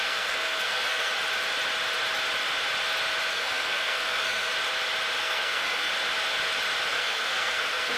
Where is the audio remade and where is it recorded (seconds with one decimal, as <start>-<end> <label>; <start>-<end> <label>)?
0.0-1.1 remade; 1.1-3.3 recorded; 3.3-4.5 remade; 4.5-5.2 recorded; 5.2-5.9 remade; 5.9-6.9 recorded; 6.9-8.0 remade